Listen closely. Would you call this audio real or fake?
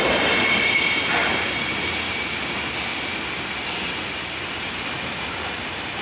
fake